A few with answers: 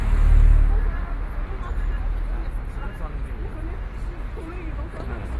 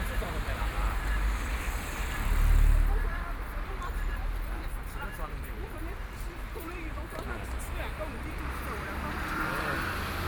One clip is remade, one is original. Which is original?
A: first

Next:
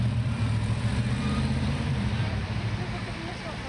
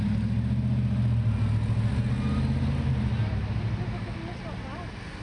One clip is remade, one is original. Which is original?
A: second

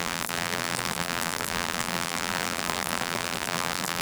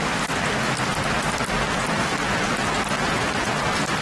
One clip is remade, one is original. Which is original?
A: second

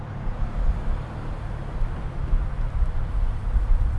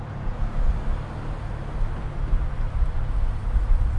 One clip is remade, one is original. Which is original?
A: second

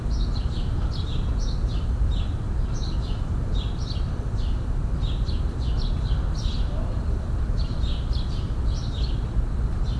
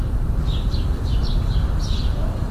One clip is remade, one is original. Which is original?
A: first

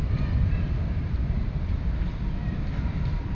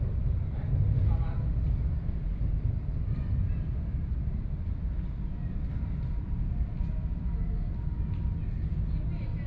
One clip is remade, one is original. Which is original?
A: second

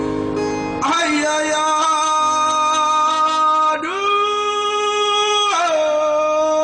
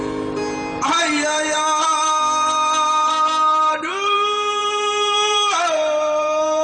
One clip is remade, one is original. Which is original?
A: first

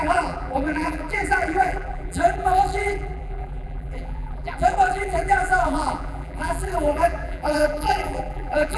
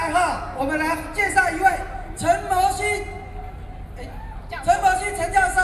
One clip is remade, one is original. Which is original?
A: second